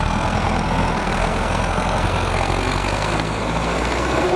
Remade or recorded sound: remade